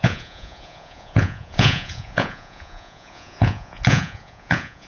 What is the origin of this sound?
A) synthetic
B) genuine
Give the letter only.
A